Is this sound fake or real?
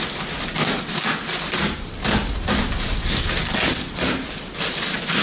real